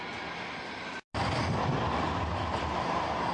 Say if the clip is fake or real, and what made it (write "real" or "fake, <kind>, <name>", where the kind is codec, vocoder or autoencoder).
real